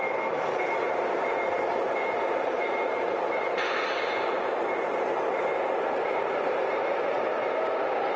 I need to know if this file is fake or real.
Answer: fake